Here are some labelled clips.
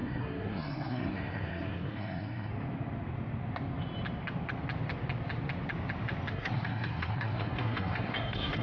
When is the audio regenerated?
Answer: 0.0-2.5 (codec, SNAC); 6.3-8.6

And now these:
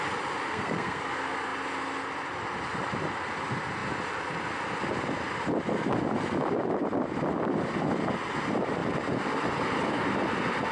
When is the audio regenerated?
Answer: 0.5-1.0 (codec, SNAC)

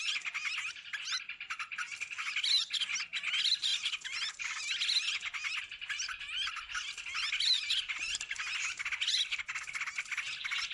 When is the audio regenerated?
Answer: none

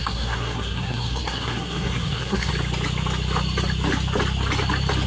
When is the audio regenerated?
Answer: 0.0-2.5 (codec, SNAC)

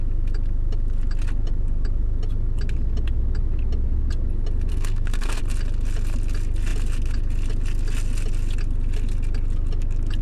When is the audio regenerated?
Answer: 4.7-5.4 (codec, SNAC)

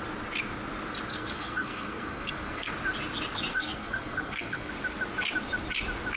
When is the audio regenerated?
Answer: 1.1-2.7 (codec, SNAC); 3.5-4.7